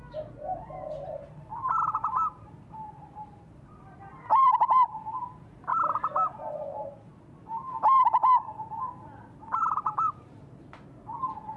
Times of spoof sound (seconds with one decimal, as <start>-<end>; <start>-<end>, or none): 0.0-7.1; 8.9-11.6